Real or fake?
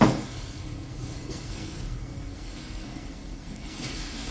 fake